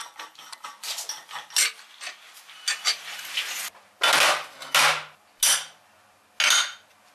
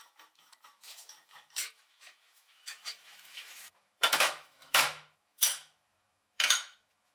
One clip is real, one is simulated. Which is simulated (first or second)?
second